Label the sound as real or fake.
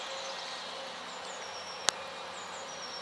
real